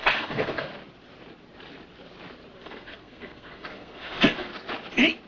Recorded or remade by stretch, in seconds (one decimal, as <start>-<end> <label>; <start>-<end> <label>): 0.0-0.7 remade; 0.7-2.6 recorded; 2.6-4.5 remade; 4.5-5.3 recorded